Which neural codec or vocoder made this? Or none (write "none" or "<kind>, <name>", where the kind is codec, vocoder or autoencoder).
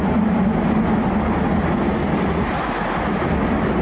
none